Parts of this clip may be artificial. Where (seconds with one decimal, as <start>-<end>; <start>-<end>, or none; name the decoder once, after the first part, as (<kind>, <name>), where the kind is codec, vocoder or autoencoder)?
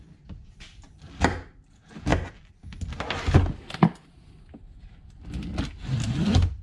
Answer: none